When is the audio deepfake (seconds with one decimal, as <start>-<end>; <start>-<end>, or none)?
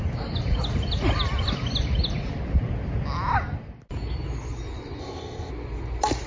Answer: 5.0-5.5